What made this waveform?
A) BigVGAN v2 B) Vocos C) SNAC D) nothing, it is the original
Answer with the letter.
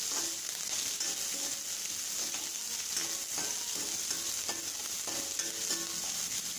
D